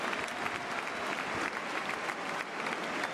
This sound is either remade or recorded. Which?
recorded